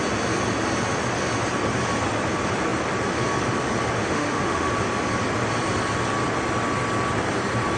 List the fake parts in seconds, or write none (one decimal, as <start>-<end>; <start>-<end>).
4.0-4.7